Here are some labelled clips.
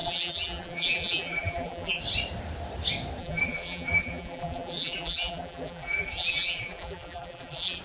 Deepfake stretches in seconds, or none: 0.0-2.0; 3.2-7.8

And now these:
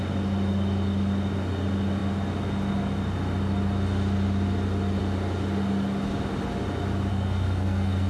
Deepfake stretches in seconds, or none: 7.1-8.1